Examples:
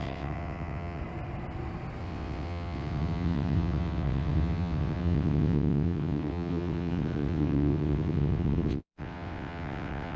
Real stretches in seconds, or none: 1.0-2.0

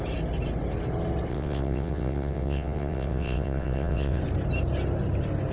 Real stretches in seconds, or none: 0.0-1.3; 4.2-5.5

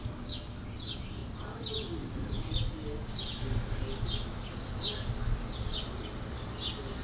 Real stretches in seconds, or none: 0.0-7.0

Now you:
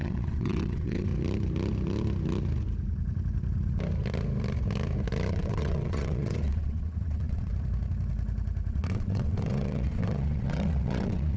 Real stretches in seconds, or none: 1.1-5.3; 7.5-8.7

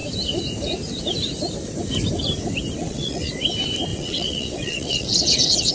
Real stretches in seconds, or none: 0.0-2.8; 3.3-3.9